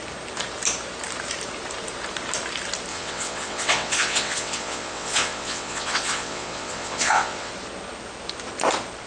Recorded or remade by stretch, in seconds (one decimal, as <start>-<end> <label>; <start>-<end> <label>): 0.0-2.9 recorded; 2.9-7.5 remade; 7.5-9.1 recorded